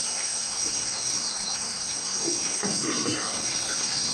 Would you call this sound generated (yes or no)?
yes